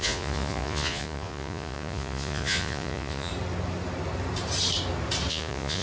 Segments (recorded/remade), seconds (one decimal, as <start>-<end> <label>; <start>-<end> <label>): 0.0-3.3 remade; 3.3-5.3 recorded; 5.3-5.8 remade